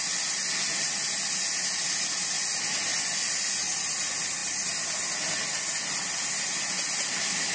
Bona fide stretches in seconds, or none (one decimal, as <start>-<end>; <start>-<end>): 0.0-7.5